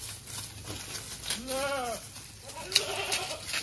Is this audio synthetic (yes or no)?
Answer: no